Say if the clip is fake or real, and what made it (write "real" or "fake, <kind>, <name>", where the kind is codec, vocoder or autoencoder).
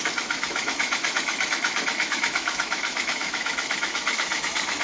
fake, autoencoder, DAC-VAE